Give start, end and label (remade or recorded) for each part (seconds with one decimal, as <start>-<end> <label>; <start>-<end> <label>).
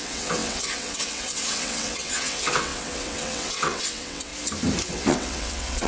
0.0-4.3 remade; 4.3-4.9 recorded; 4.9-5.9 remade